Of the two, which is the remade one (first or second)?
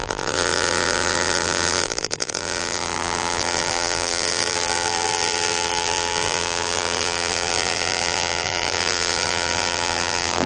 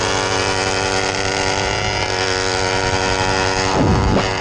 first